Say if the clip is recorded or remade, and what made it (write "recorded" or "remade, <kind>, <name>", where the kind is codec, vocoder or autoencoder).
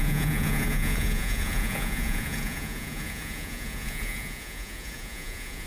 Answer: remade, vocoder, Vocos